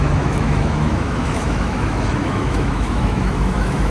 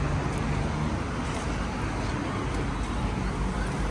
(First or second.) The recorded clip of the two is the second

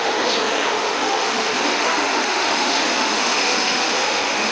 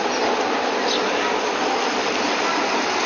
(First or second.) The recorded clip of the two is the second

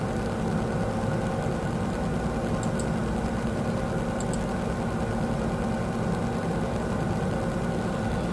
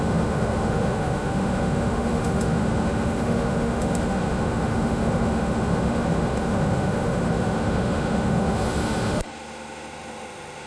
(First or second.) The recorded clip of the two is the first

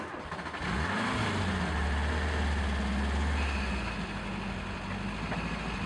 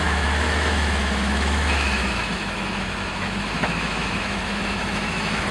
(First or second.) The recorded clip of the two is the first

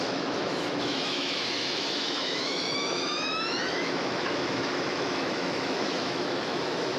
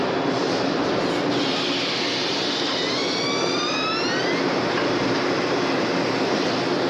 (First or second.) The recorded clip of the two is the second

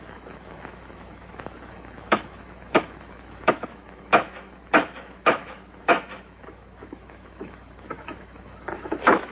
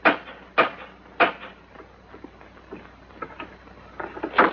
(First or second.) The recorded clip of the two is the second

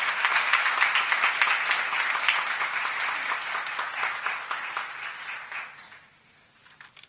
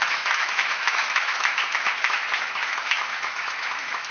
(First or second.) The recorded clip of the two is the first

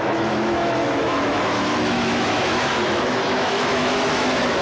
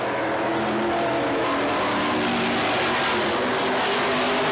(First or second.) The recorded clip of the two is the second